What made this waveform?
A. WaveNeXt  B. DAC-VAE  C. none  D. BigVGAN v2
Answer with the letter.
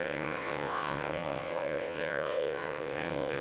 A